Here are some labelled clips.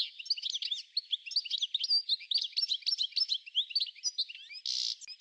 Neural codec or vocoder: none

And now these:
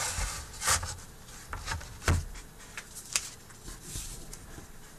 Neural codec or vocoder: none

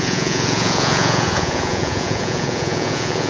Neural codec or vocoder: vocoder, Vocos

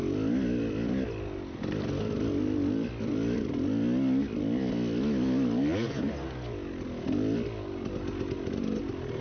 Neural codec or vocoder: none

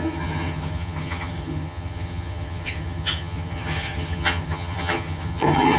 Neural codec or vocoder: vocoder, HiFi-GAN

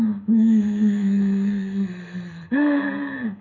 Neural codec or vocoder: codec, SNAC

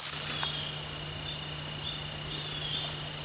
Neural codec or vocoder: none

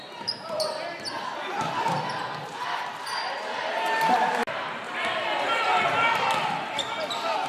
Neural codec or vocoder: none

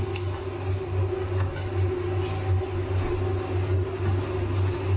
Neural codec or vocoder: none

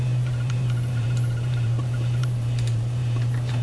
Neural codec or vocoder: vocoder, BigVGAN v2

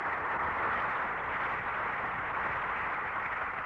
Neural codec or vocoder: none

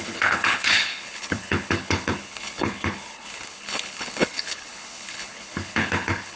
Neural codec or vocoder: codec, HILCodec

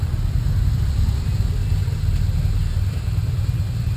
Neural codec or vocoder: none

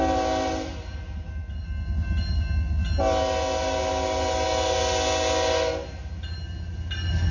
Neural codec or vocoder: none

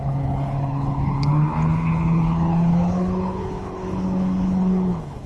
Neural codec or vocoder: codec, HILCodec